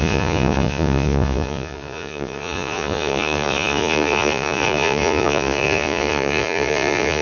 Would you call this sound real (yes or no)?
no